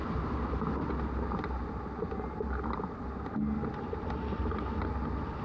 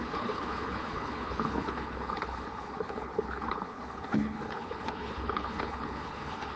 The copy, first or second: second